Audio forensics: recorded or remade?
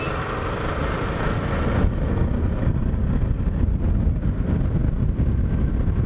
recorded